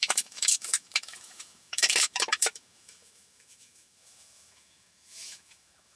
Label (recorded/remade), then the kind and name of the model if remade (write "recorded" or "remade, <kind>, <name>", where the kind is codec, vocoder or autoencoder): remade, autoencoder, DAC-VAE